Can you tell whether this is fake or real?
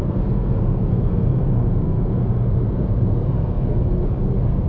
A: fake